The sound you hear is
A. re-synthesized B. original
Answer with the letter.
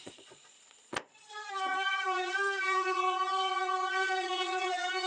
A